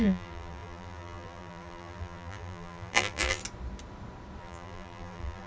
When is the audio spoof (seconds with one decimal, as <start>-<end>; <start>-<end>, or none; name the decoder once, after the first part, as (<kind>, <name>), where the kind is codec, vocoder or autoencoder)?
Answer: 0.0-3.4 (vocoder, BigVGAN v2); 4.4-5.5